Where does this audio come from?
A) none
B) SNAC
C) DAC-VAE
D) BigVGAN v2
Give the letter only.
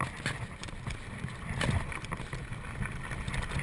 A